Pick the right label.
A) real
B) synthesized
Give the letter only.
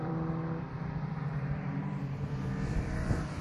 B